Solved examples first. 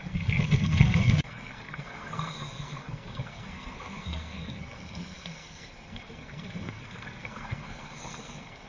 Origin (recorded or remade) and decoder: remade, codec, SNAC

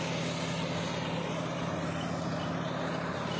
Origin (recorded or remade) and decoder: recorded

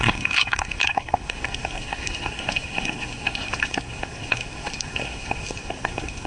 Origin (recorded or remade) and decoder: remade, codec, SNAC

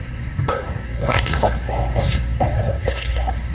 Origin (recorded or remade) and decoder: remade, codec, SNAC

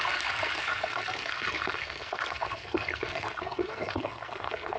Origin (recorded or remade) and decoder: remade, codec, SNAC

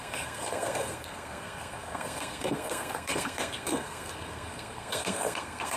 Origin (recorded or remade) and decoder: remade, codec, SNAC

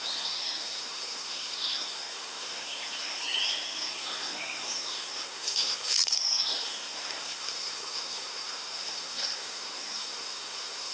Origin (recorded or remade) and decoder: remade, codec, SNAC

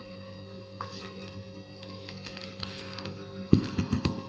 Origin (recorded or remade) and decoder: remade, codec, SNAC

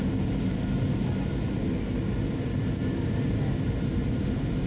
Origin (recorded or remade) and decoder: recorded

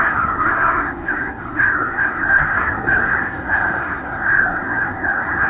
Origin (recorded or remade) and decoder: remade, codec, SNAC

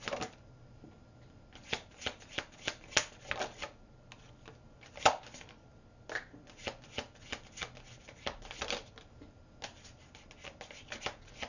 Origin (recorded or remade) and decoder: recorded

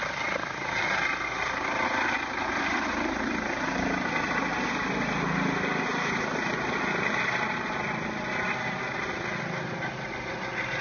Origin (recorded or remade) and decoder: recorded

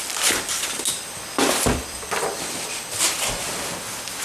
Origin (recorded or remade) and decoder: recorded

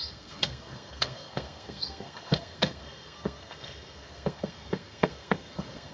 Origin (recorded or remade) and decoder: remade, codec, SNAC